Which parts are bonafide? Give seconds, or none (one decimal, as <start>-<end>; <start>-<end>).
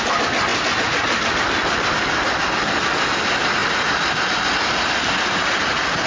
0.0-6.1